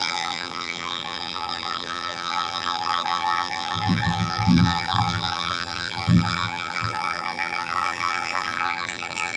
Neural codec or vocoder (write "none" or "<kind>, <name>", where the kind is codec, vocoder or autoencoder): vocoder, BigVGAN v2